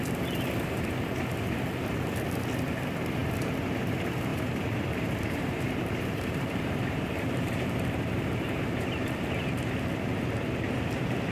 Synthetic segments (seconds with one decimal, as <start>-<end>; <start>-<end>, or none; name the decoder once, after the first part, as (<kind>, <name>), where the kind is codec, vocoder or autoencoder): 4.3-8.9 (vocoder, BigVGAN v2)